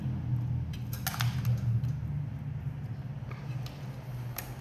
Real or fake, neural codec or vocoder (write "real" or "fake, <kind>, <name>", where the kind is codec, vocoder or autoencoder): real